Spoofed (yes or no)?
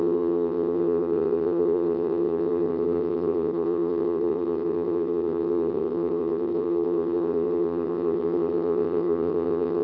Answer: yes